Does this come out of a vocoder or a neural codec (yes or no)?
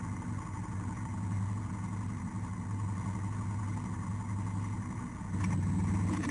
no